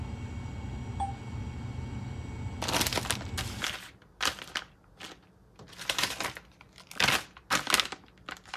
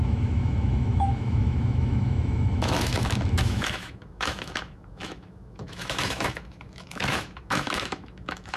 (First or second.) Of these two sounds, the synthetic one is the second